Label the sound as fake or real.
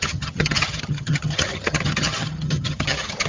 fake